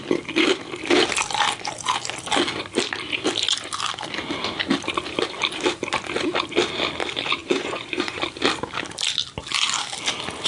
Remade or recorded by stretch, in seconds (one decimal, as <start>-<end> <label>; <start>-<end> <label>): 0.0-7.4 recorded; 7.4-8.2 remade; 8.2-10.5 recorded